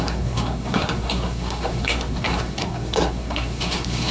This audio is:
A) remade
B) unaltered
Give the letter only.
A